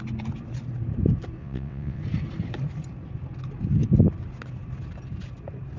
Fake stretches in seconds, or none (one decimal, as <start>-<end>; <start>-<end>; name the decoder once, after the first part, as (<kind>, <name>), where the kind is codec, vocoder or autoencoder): 1.4-2.0 (vocoder, WaveNeXt)